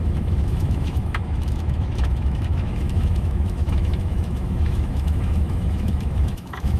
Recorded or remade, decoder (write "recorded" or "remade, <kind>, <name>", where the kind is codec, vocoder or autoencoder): remade, autoencoder, DAC-VAE